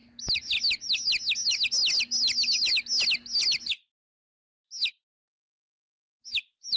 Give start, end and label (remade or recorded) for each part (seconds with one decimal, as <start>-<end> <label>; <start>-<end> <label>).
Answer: 0.0-6.8 recorded

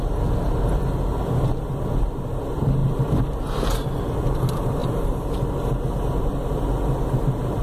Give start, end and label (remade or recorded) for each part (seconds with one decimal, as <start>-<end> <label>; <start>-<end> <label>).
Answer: 0.0-7.6 recorded

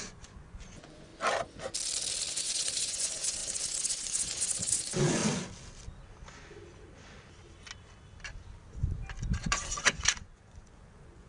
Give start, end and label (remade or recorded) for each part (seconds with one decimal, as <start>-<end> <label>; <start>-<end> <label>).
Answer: 0.0-1.1 remade; 1.1-2.3 recorded; 2.3-5.2 remade; 5.2-9.3 recorded; 9.3-11.3 remade

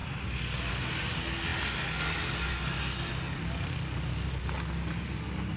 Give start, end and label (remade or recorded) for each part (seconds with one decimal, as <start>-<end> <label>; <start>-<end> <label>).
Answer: 0.0-5.6 recorded

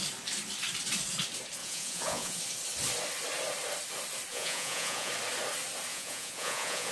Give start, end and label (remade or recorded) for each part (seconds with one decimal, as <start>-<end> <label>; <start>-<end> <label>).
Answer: 0.0-1.6 recorded; 1.6-2.4 remade; 2.4-4.3 recorded; 4.3-5.1 remade; 5.1-5.9 recorded; 5.9-6.9 remade

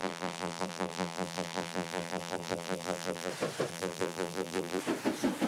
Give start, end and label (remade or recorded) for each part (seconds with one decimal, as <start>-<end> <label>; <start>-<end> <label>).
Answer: 0.0-3.3 remade; 3.3-3.7 recorded; 3.7-4.8 remade; 4.8-5.5 recorded